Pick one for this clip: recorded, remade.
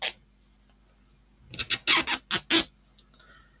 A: recorded